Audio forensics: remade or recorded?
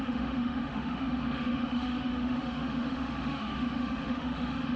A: remade